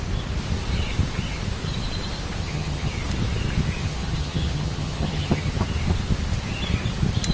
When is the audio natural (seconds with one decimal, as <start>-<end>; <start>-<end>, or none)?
0.0-2.4; 2.9-3.8; 5.5-7.3